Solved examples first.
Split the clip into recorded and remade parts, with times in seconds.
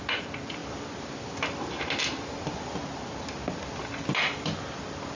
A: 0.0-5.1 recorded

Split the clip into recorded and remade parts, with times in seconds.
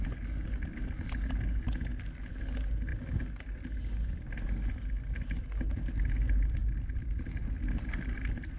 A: 0.0-8.6 recorded